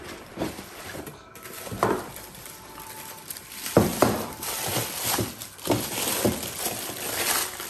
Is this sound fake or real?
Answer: fake